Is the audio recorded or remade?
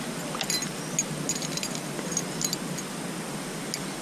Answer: recorded